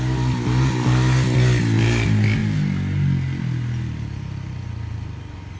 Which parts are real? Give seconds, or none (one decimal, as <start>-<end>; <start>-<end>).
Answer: 0.0-5.6

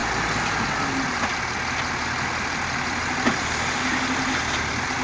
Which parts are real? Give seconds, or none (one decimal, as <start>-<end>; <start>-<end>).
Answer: 0.0-5.0